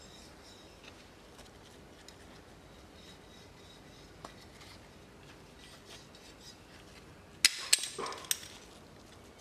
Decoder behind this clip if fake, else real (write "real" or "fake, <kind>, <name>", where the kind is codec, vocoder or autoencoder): real